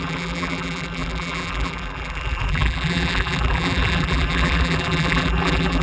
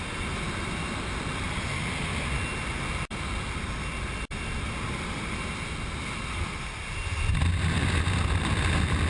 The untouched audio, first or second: second